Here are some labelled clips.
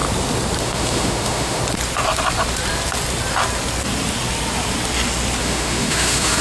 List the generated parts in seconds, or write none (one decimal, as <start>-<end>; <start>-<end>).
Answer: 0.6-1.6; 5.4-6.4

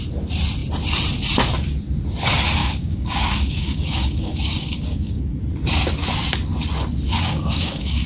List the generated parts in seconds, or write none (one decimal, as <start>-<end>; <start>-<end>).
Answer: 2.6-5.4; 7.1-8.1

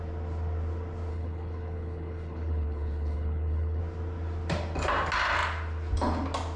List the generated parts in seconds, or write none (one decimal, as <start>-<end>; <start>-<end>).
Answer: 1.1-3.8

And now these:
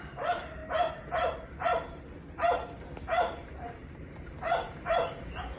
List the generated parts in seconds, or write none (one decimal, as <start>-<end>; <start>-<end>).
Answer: 0.0-5.6

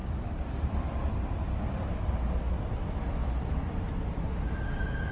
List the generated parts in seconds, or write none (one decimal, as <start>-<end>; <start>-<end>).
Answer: none

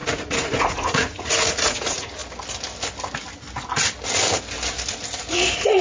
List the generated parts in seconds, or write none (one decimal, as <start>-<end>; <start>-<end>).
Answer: 0.0-2.2